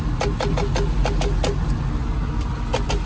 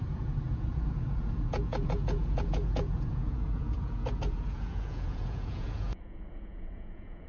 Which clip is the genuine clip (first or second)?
first